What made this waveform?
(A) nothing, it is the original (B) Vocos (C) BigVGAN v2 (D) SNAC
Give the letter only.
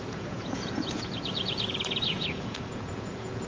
B